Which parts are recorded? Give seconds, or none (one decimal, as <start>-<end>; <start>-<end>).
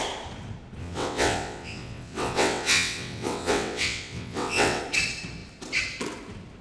0.0-0.8; 4.8-6.6